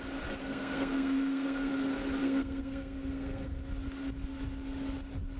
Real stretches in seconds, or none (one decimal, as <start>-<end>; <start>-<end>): 0.0-0.4; 1.7-2.2; 3.6-5.4

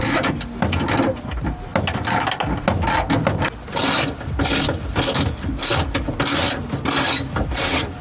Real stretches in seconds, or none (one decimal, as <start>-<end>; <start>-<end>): 0.0-8.0